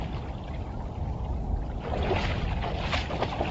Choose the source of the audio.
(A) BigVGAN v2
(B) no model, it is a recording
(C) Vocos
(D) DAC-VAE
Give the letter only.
B